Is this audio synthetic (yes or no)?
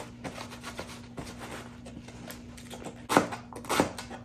no